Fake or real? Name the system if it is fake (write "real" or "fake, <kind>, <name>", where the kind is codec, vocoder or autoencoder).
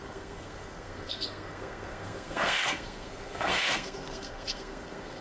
fake, codec, SNAC